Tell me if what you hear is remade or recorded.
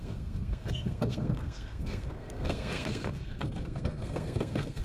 remade